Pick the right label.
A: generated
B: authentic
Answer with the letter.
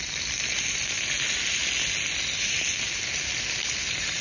B